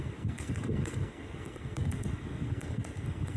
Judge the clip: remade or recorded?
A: remade